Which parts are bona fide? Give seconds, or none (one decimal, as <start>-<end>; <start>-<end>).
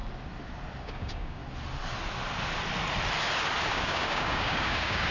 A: 0.0-0.8; 1.4-3.7